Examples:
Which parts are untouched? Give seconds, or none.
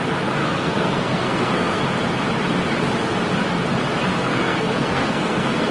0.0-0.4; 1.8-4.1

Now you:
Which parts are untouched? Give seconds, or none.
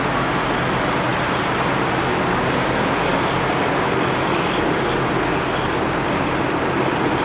0.0-7.2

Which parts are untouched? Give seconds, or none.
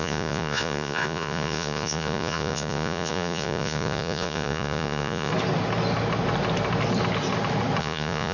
5.3-7.8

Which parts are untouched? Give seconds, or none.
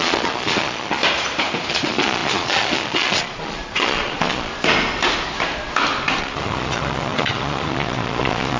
1.0-1.7; 4.5-6.2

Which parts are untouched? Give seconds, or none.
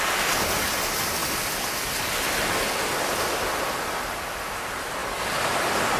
0.0-6.0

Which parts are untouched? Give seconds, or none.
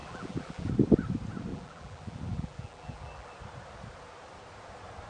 0.7-1.5; 3.3-5.1